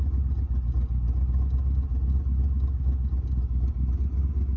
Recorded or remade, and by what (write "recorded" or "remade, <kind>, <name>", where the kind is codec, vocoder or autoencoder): recorded